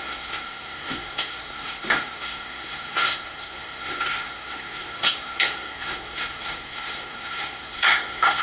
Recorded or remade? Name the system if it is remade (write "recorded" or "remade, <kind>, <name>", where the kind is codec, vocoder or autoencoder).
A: remade, codec, SNAC